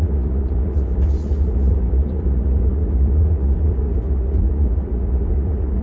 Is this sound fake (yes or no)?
yes